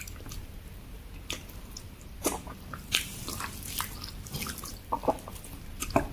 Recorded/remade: recorded